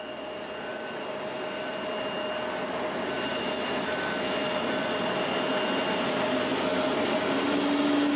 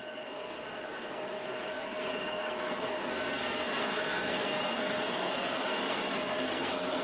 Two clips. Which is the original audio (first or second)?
first